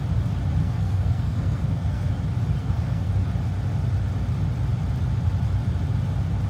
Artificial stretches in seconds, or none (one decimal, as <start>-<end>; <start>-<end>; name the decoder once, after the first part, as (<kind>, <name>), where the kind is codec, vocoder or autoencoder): 0.6-2.1 (codec, SNAC); 2.6-3.1